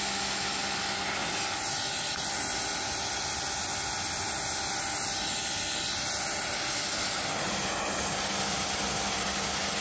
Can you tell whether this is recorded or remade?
recorded